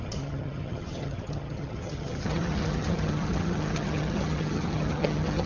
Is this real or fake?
fake